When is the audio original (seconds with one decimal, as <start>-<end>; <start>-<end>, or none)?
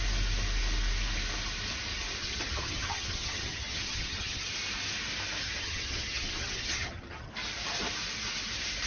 0.0-2.2; 4.5-5.4; 7.3-8.9